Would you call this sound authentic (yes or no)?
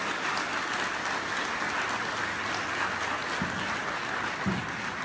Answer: yes